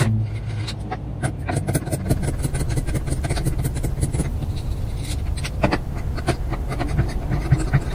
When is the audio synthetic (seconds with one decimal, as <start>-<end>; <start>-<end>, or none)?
4.2-5.1